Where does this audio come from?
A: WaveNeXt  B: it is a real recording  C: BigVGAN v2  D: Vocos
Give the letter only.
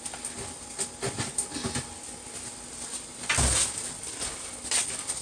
B